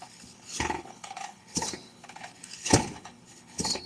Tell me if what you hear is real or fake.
fake